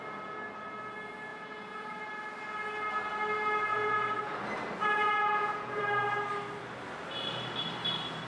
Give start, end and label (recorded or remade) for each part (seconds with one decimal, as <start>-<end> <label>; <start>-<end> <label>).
0.0-1.3 recorded; 1.3-2.0 remade; 2.0-3.7 recorded; 3.7-4.2 remade; 4.2-4.8 recorded; 4.8-5.8 remade; 5.8-8.3 recorded